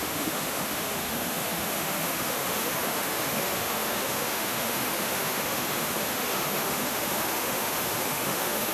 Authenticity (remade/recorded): remade